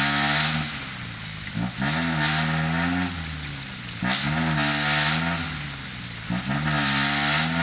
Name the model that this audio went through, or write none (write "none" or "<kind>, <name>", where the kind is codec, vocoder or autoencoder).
none